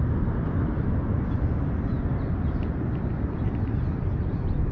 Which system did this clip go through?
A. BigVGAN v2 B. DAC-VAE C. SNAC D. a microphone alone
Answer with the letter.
D